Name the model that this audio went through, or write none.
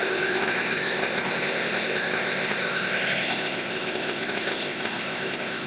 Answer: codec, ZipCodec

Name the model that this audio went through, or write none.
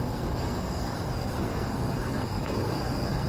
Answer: codec, SNAC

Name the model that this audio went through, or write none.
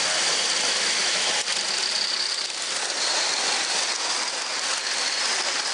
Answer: none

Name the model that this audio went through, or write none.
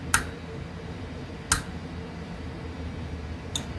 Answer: none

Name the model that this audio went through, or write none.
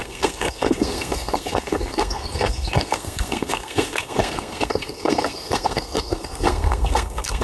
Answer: codec, SNAC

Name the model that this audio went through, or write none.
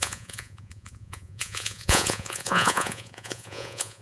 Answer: vocoder, Vocos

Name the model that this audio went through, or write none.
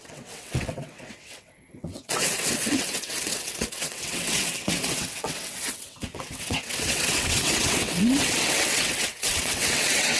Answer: vocoder, WaveNeXt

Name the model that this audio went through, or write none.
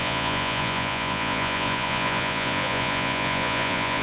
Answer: vocoder, Vocos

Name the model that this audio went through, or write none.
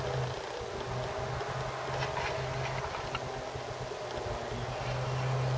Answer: none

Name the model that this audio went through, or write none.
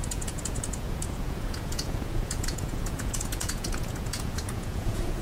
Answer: vocoder, Vocos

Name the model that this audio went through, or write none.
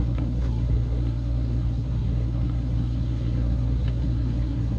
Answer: codec, SNAC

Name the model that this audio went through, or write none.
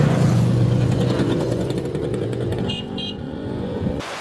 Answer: vocoder, Vocos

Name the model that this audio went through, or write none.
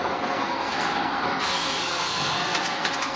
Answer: codec, SNAC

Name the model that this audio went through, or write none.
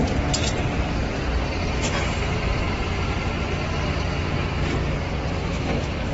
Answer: none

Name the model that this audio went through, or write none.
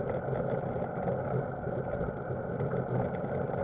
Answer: none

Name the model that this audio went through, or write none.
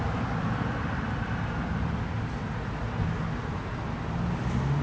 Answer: none